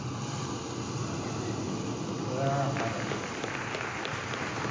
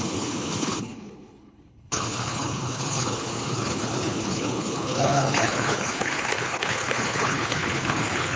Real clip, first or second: first